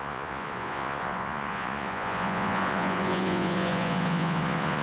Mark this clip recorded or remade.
remade